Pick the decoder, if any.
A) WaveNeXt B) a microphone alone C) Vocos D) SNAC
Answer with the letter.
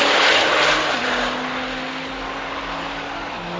B